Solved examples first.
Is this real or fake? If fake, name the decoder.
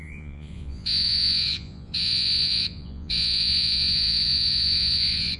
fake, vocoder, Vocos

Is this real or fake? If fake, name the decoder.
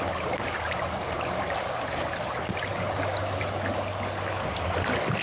real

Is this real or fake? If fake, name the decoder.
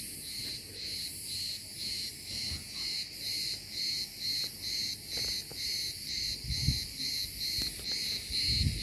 real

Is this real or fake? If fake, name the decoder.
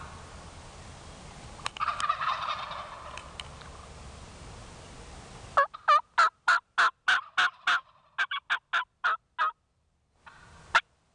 real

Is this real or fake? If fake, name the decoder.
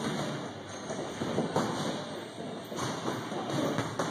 real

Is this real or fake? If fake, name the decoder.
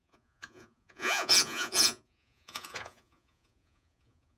fake, vocoder, Vocos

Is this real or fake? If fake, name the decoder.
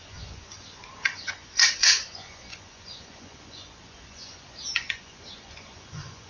fake, vocoder, Vocos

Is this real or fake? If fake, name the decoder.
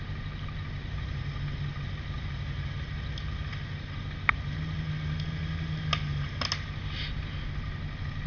real